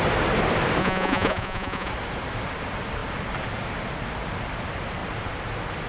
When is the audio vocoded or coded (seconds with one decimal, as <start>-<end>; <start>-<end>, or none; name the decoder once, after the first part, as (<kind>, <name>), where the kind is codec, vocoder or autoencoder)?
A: 0.8-1.9 (vocoder, Vocos)